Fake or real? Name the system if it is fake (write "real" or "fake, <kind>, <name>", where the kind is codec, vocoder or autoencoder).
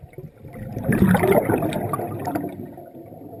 real